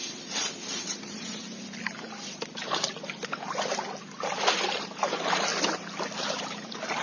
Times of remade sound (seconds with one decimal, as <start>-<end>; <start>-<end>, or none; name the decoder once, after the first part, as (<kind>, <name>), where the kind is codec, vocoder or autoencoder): 0.0-1.4 (vocoder, BigVGAN v2); 4.7-5.5; 6.2-7.0